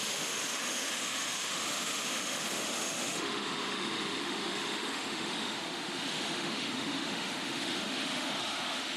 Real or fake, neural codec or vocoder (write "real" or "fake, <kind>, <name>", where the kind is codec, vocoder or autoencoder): fake, autoencoder, DAC-VAE